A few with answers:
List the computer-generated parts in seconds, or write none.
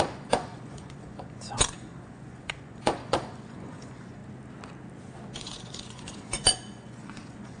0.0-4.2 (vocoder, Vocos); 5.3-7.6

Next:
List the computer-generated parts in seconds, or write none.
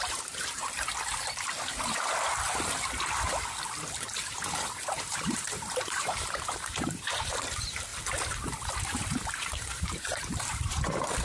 0.0-0.6 (vocoder, BigVGAN v2); 4.9-7.9; 8.8-11.2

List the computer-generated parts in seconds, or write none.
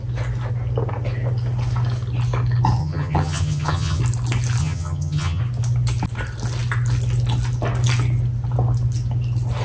2.8-4.0 (vocoder, HiFi-GAN); 4.6-5.4